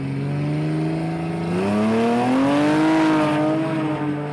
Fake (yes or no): no